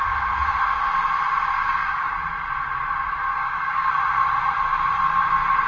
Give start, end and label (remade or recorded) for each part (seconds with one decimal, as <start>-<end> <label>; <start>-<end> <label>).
0.0-1.5 recorded; 1.5-2.1 remade; 2.1-3.3 recorded; 3.3-3.9 remade; 3.9-5.7 recorded